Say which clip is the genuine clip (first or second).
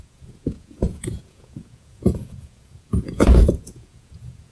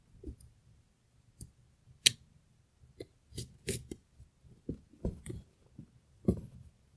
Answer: second